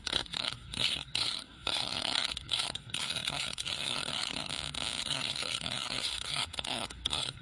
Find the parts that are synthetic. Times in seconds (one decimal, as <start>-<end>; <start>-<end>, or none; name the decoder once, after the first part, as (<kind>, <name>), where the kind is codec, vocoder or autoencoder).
0.0-4.5 (codec, SNAC); 5.0-7.4